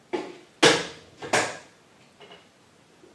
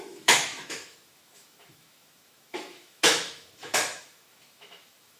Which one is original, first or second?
first